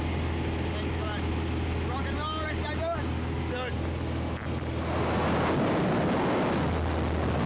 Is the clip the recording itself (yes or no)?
yes